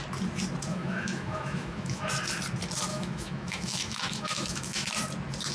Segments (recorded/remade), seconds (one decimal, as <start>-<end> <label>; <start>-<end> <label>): 0.0-0.7 recorded; 0.7-2.1 remade; 2.1-2.9 recorded; 2.9-4.9 remade; 4.9-5.5 recorded